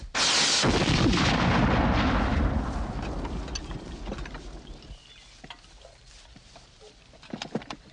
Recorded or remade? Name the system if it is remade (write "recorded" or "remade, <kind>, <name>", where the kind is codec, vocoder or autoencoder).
recorded